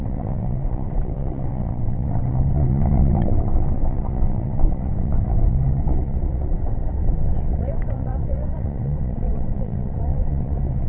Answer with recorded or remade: remade